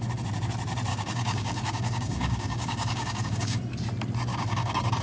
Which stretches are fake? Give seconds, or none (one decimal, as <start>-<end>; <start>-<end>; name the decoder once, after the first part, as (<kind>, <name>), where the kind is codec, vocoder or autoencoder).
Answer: 0.9-3.6 (codec, DAC); 4.3-5.0